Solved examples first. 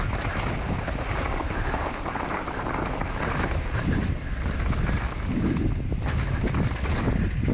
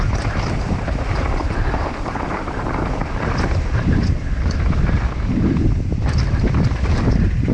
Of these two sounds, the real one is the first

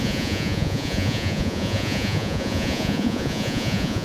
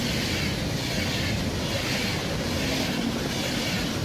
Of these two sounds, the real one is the second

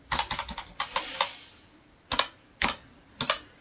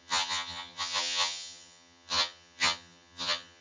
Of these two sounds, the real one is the first